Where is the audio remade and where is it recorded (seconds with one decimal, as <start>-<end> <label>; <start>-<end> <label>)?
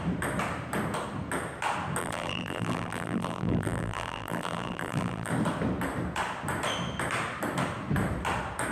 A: 0.0-2.0 recorded; 2.0-5.3 remade; 5.3-8.7 recorded